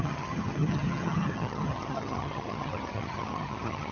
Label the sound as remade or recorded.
remade